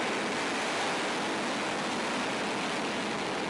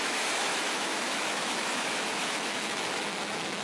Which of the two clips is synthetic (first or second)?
second